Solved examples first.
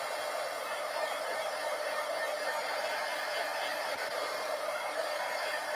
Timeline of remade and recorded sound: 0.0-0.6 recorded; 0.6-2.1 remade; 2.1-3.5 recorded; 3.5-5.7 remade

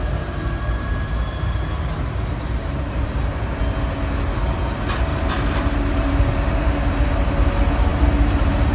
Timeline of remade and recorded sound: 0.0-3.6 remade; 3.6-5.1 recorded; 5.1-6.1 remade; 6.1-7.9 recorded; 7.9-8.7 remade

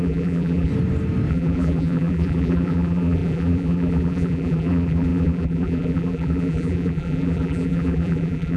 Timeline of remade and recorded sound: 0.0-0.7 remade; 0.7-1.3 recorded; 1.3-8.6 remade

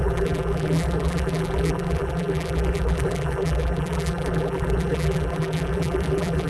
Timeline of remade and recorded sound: 0.0-6.5 remade

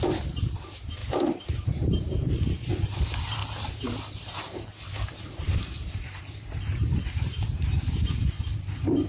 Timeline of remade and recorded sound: 0.0-9.1 remade

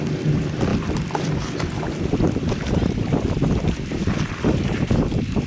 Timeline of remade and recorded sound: 0.0-0.7 recorded; 0.7-3.1 remade; 3.1-5.5 recorded